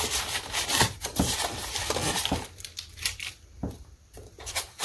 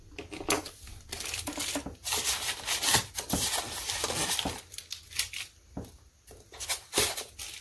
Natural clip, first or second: second